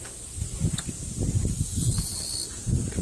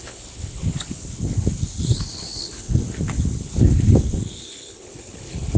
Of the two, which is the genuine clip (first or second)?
first